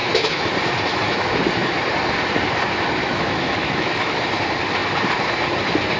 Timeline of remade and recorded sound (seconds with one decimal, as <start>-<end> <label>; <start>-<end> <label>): 0.0-0.5 remade; 0.5-0.9 recorded; 0.9-1.4 remade; 1.4-3.0 recorded; 3.0-4.2 remade; 4.2-6.0 recorded